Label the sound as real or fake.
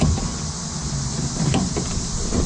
real